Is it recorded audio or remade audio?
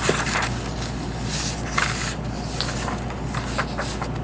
recorded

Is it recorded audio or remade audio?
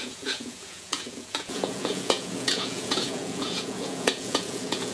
remade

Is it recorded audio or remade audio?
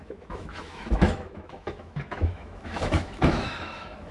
remade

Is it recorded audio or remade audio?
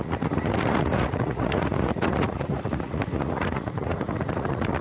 remade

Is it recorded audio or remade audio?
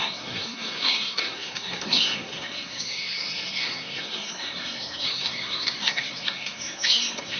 remade